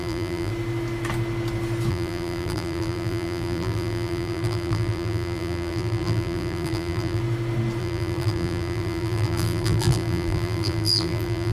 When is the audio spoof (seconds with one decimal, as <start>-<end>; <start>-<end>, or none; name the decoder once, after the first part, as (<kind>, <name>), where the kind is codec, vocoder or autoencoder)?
0.0-0.5 (vocoder, BigVGAN v2); 1.9-7.2; 7.8-11.5